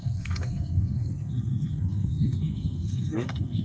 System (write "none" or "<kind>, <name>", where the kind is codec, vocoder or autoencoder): codec, SNAC